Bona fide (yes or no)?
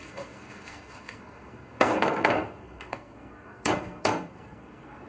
no